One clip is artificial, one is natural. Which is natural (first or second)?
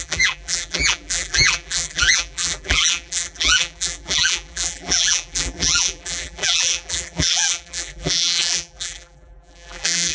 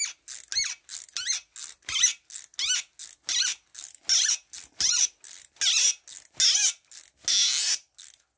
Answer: second